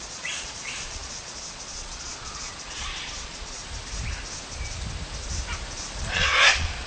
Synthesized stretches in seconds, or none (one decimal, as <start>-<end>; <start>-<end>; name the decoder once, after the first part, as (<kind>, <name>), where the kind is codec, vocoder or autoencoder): 0.0-3.6 (vocoder, Vocos); 6.0-6.9